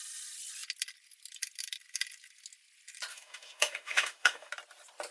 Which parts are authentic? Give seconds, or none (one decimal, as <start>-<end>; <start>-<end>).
0.0-3.1; 4.5-5.1